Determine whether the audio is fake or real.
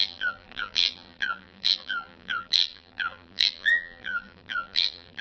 fake